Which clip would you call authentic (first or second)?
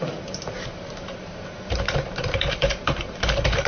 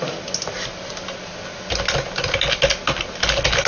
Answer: second